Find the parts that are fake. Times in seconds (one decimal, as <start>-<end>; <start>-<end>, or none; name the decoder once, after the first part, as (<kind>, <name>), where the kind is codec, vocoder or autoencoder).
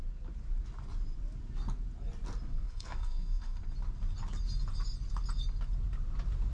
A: 2.5-3.6 (codec, SNAC)